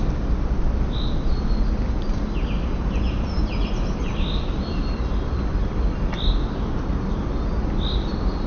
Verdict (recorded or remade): recorded